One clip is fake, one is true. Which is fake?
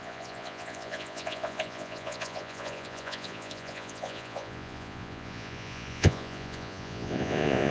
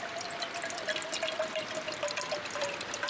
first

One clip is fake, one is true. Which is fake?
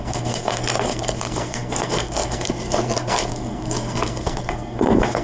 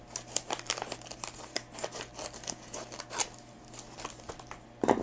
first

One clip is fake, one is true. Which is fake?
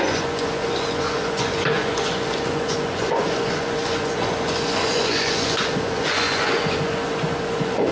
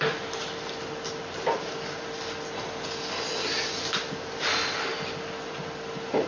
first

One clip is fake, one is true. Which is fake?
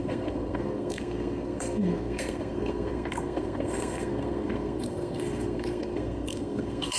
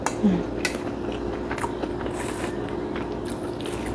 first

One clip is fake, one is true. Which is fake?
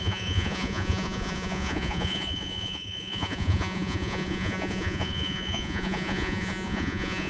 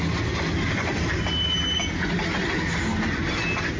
first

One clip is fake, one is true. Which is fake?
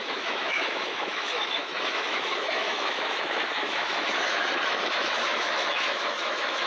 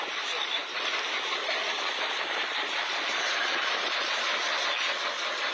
first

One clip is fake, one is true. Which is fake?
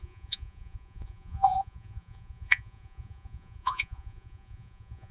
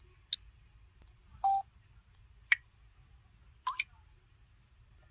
first